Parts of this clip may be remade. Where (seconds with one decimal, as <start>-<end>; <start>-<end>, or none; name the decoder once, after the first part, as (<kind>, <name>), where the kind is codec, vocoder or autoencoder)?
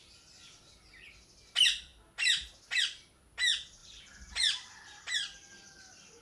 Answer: 3.8-5.8 (vocoder, BigVGAN v2)